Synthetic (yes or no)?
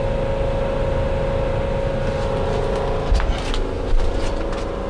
no